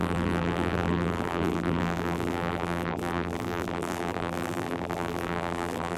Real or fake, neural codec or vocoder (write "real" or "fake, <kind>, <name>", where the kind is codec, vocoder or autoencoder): fake, vocoder, BigVGAN v2